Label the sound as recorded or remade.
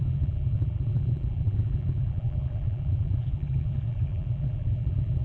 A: remade